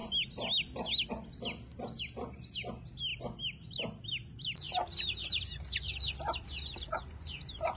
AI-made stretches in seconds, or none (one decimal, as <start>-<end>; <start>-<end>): none